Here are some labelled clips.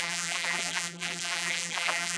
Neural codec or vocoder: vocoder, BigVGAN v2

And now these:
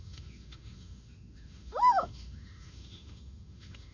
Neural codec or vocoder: autoencoder, DAC-VAE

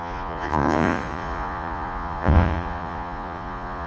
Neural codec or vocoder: vocoder, Vocos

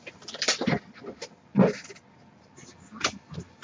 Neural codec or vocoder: none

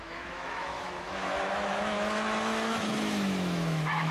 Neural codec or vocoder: autoencoder, DAC-VAE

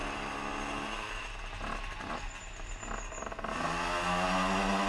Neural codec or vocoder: none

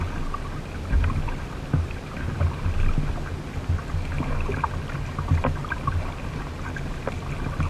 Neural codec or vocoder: none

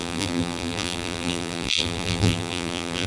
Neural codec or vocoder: vocoder, BigVGAN v2